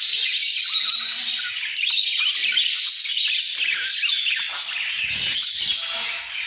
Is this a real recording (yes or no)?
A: yes